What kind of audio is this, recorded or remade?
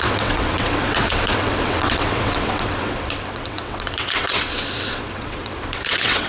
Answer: remade